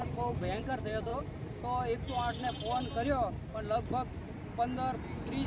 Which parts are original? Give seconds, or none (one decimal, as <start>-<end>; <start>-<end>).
0.0-5.5